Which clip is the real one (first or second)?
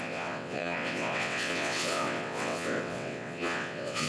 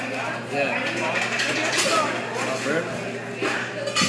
second